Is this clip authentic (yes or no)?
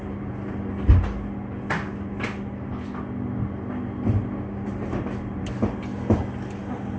yes